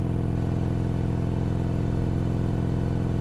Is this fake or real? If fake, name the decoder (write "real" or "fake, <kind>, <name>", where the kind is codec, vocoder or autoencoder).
real